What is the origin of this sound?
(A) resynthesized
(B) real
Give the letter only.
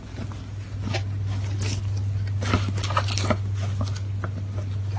B